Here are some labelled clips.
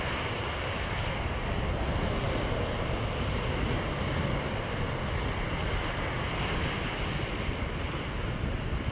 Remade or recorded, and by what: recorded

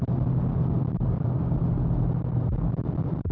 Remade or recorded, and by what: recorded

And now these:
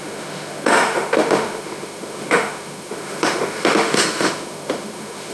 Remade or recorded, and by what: remade, autoencoder, DAC-VAE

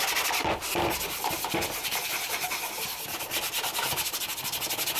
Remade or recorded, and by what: recorded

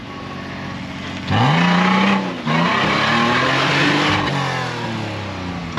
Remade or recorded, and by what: recorded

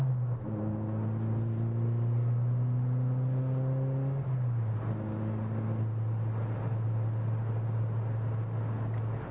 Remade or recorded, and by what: recorded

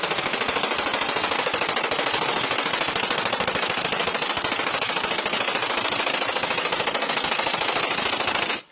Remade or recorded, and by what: remade, vocoder, BigVGAN v2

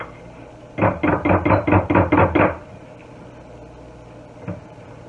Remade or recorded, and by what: recorded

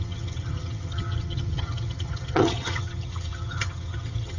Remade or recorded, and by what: remade, vocoder, HiFi-GAN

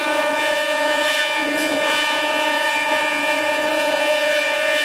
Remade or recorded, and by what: remade, vocoder, Vocos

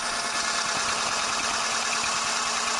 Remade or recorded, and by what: recorded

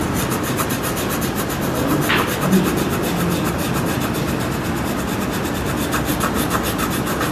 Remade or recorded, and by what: recorded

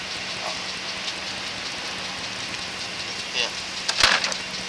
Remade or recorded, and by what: recorded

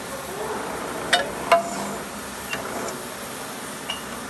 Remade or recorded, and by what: recorded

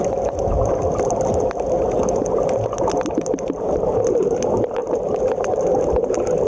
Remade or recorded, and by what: recorded